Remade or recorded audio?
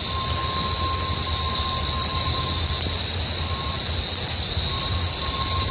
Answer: recorded